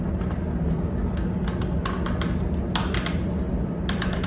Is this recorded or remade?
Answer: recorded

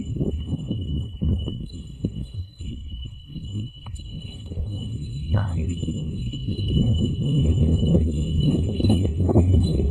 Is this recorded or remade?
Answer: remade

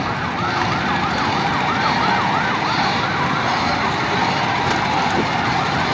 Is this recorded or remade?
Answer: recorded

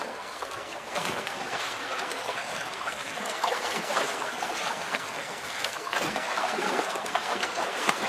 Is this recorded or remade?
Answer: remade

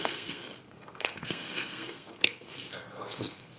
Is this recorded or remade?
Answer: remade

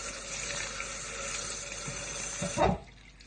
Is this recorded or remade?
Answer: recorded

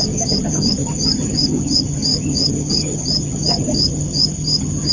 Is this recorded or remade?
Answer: remade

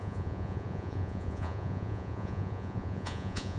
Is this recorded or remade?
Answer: remade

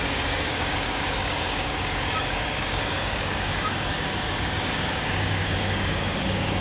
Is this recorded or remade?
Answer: remade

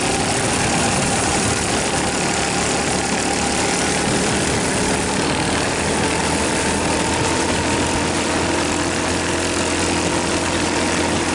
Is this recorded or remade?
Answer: recorded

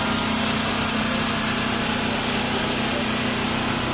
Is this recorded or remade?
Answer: recorded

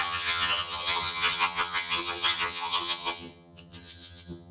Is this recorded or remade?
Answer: remade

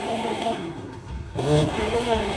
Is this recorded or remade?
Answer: remade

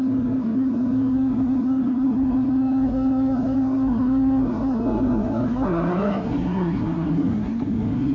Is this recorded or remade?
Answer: remade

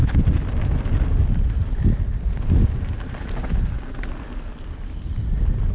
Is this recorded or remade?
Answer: recorded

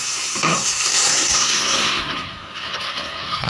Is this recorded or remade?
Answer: remade